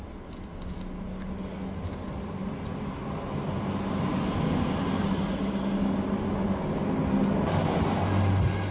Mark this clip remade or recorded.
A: recorded